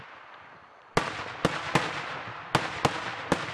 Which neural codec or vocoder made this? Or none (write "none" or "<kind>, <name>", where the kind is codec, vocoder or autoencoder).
none